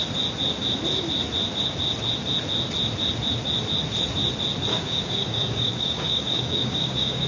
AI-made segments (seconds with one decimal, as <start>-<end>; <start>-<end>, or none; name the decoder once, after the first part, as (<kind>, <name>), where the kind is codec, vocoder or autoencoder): 4.7-7.3 (codec, DAC)

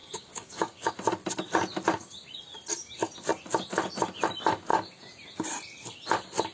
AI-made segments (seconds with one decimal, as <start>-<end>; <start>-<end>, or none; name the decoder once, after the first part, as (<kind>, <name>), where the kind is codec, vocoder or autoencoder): 0.0-0.9 (codec, DAC)

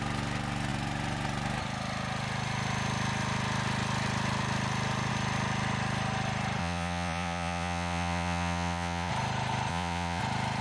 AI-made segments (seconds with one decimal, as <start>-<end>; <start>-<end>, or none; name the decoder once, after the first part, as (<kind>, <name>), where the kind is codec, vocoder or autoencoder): 6.6-9.1 (vocoder, Vocos); 9.7-10.2

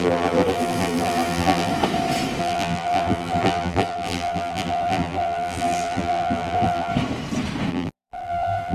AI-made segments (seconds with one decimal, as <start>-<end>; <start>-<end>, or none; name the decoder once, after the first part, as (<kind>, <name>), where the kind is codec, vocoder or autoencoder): 0.0-1.7 (vocoder, BigVGAN v2); 2.4-6.9; 7.7-8.7

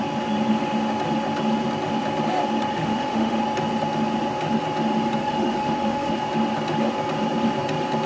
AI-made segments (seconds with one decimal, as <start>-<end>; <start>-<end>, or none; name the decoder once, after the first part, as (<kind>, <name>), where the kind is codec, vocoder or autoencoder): 2.7-3.4 (autoencoder, DAC-VAE); 5.2-6.1